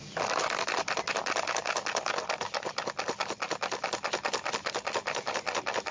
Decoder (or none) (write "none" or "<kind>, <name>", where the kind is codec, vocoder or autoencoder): none